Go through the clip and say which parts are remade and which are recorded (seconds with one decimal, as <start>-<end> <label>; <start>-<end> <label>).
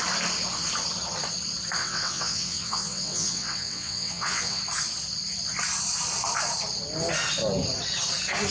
0.0-1.8 recorded; 1.8-4.6 remade; 4.6-8.5 recorded